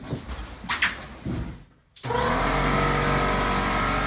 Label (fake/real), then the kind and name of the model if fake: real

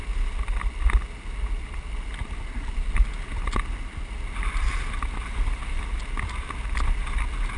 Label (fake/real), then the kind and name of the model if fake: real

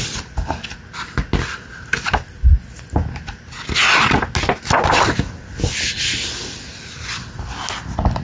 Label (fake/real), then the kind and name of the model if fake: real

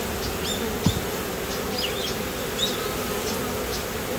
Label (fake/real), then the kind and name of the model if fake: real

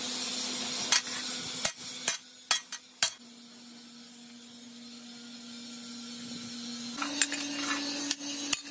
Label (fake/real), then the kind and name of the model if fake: real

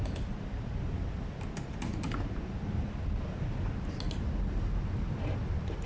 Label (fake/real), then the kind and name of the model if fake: real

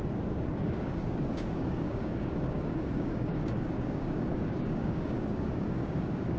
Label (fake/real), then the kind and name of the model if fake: fake, codec, DAC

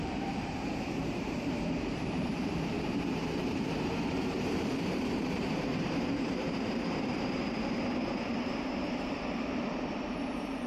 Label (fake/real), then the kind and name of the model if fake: fake, vocoder, BigVGAN v2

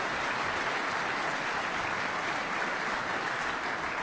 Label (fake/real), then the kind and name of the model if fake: real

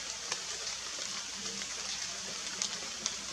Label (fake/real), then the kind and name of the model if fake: real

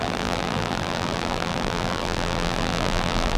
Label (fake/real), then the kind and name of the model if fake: fake, vocoder, BigVGAN v2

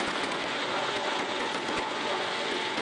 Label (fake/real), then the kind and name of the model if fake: fake, vocoder, Vocos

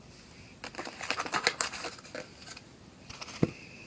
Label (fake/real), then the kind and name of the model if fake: real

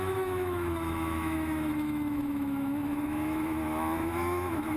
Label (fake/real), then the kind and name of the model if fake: fake, autoencoder, DAC-VAE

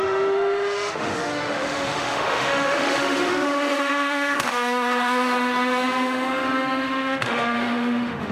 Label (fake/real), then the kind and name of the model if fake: fake, autoencoder, DAC-VAE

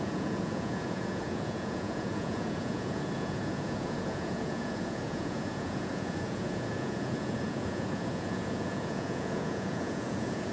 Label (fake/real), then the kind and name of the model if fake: fake, vocoder, Vocos